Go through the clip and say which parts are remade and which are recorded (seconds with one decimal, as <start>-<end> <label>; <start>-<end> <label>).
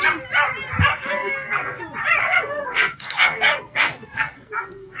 0.0-0.9 recorded; 0.9-1.8 remade; 1.8-2.2 recorded; 2.2-5.0 remade